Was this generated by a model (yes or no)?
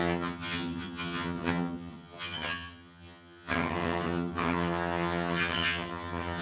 yes